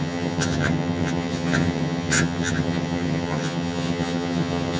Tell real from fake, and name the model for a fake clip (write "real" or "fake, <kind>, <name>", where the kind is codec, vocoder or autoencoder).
fake, vocoder, HiFi-GAN